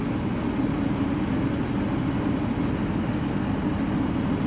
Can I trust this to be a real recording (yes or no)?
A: yes